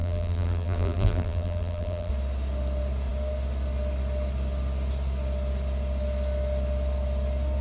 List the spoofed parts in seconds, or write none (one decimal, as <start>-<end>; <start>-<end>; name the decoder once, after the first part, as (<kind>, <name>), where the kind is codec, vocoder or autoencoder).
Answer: 0.0-2.1 (vocoder, BigVGAN v2)